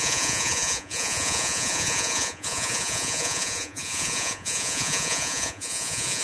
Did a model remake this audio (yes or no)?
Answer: yes